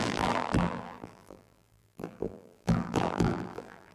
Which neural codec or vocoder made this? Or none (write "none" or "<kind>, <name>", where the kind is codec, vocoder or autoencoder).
vocoder, BigVGAN v2